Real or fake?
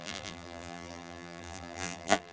fake